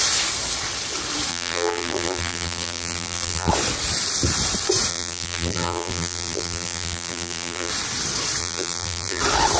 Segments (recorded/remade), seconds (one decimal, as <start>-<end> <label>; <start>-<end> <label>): 0.0-1.3 recorded; 1.3-3.5 remade; 3.5-4.9 recorded; 4.9-7.7 remade; 7.7-8.4 recorded; 8.4-9.2 remade; 9.2-9.6 recorded